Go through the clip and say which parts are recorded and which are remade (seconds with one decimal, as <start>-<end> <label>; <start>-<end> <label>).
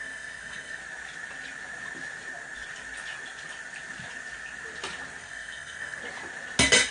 0.0-0.8 remade; 0.8-5.2 recorded; 5.2-6.0 remade; 6.0-6.9 recorded